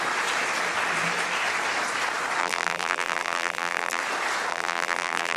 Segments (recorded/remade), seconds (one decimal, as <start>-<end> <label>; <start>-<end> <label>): 0.0-2.4 recorded; 2.4-4.0 remade; 4.0-4.5 recorded; 4.5-5.4 remade